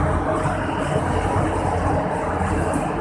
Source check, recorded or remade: recorded